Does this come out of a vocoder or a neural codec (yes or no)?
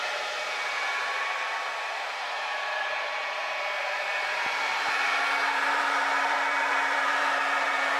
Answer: yes